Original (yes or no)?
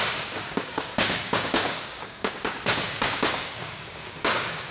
no